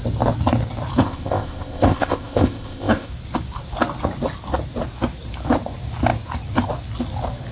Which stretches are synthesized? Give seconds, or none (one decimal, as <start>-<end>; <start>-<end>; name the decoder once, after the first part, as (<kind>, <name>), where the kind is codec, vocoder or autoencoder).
1.0-3.1 (codec, ZipCodec)